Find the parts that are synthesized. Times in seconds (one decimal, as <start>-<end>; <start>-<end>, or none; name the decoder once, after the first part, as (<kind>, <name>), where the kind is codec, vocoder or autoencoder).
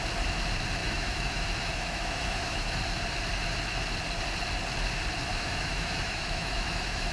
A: 0.8-2.8 (autoencoder, DAC-VAE); 5.3-7.1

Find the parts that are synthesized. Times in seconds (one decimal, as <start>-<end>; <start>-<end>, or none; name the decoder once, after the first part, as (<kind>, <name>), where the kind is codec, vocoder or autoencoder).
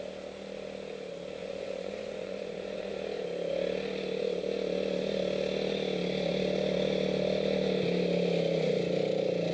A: 1.4-2.9 (vocoder, Vocos)